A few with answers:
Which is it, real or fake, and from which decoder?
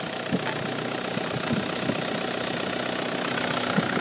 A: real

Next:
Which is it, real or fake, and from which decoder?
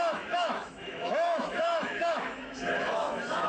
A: fake, autoencoder, DAC-VAE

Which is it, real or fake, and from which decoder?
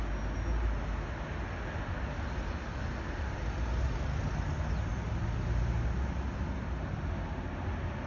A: real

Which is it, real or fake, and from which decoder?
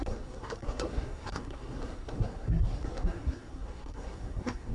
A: fake, codec, SNAC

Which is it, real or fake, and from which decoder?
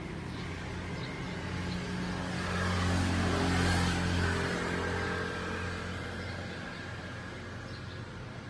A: real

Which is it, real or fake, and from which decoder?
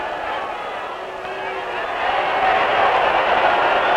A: real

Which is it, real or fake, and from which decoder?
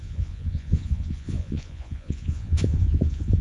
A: fake, vocoder, Vocos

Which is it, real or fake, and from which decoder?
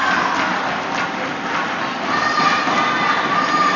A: real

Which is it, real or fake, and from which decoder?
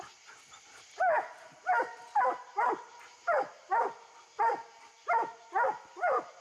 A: real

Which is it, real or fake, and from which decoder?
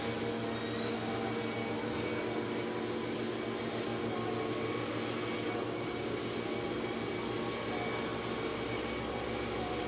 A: real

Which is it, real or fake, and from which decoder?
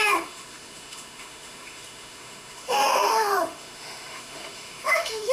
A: fake, autoencoder, DAC-VAE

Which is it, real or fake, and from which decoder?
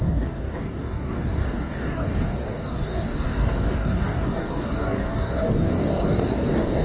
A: fake, codec, DAC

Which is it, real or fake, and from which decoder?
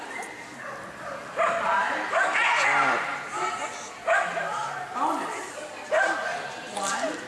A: real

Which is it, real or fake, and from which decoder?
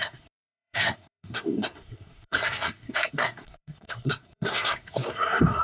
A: fake, codec, SNAC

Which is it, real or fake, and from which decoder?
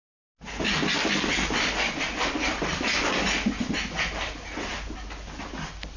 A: real